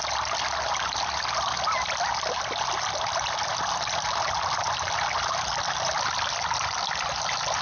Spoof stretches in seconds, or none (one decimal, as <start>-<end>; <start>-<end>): none